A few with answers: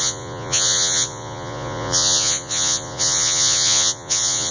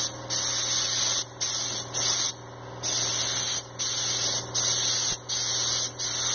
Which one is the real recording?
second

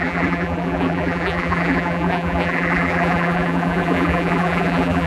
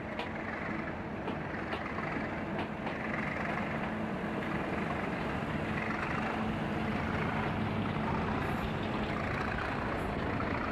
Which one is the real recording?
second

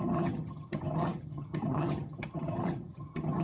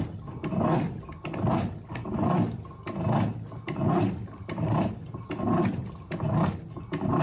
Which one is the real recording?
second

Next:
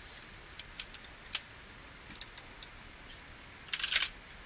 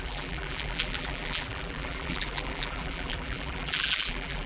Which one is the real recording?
first